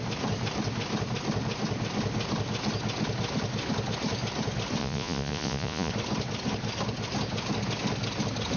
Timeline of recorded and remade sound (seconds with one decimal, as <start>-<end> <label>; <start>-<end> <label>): 0.0-4.8 recorded; 4.8-5.9 remade; 5.9-8.6 recorded